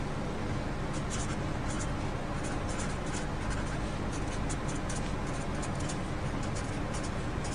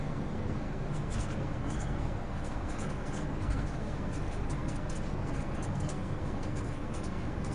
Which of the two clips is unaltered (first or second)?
first